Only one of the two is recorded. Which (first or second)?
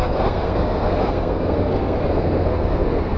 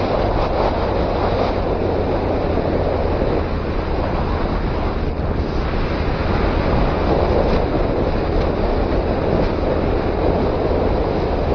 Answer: second